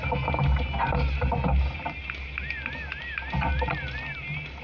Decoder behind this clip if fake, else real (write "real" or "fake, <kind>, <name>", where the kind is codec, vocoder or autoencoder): real